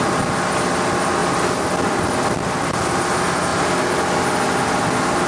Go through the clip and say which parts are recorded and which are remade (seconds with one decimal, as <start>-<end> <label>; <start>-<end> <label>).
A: 0.0-5.3 recorded